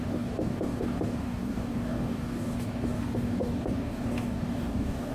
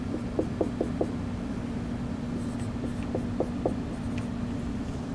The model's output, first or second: first